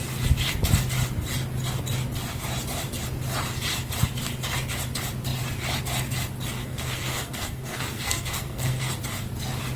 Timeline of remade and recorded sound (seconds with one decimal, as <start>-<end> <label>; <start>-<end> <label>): 0.0-6.6 recorded; 6.6-8.9 remade; 8.9-9.8 recorded